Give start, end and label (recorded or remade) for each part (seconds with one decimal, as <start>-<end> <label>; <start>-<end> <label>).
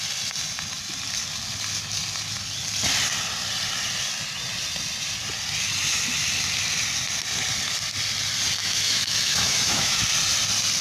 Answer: 0.0-8.6 recorded; 8.6-10.0 remade; 10.0-10.8 recorded